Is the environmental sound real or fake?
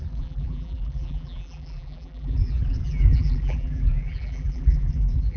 fake